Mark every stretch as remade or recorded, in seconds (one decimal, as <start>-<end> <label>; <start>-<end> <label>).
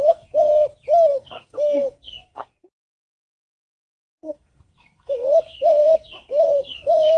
0.0-0.5 remade; 0.5-1.1 recorded; 1.1-7.2 remade